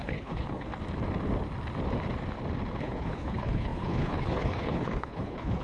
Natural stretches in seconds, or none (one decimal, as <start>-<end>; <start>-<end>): 0.7-2.8